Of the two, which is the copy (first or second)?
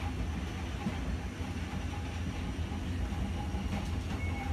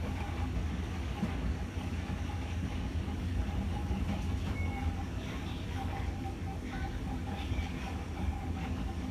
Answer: second